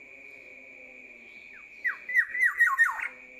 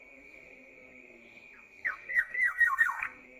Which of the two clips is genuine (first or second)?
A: first